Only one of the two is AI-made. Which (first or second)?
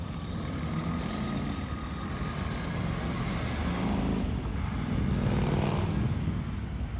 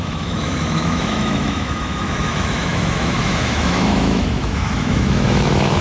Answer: second